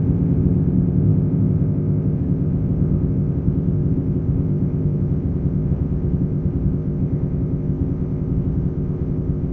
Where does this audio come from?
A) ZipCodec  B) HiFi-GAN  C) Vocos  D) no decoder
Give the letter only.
A